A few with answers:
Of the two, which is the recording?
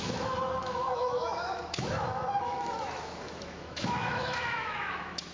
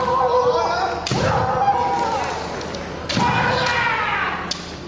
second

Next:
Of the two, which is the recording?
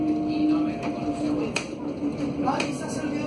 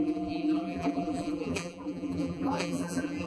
first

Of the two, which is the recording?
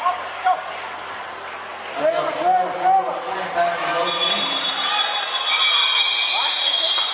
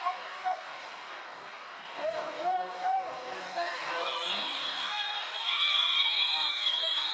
first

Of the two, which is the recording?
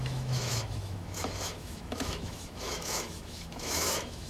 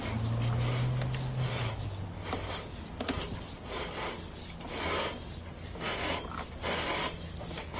second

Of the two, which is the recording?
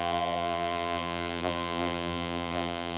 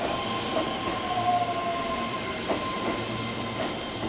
second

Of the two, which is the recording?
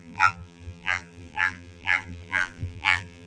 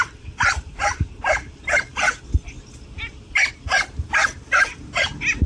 second